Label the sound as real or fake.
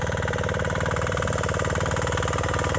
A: real